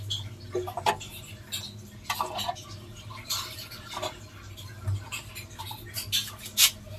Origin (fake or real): real